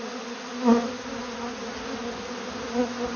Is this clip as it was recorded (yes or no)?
yes